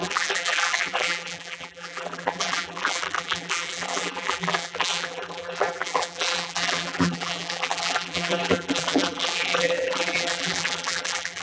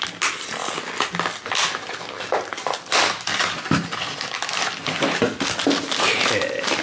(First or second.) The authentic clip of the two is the second